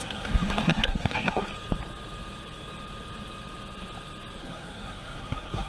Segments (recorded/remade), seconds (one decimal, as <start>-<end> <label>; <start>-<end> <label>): 0.0-1.5 remade; 1.5-4.4 recorded; 4.4-5.7 remade